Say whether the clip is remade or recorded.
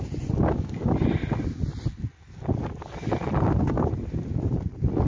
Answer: recorded